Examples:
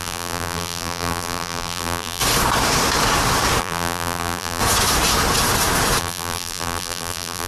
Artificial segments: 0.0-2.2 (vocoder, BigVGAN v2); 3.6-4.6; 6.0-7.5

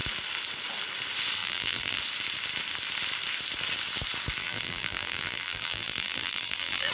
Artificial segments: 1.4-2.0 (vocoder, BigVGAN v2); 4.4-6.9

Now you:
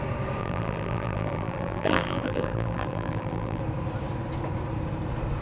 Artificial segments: 0.4-3.6 (vocoder, BigVGAN v2)